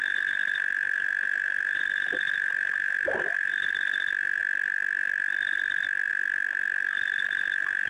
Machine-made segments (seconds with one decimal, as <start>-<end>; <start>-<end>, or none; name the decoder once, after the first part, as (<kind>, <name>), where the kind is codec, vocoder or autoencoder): none